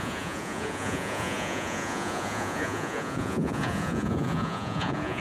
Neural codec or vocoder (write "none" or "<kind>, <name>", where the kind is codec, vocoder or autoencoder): vocoder, Vocos